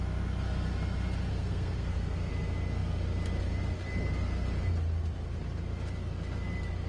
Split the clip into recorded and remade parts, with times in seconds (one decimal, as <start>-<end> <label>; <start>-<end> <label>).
0.0-1.3 recorded; 1.3-2.3 remade; 2.3-6.9 recorded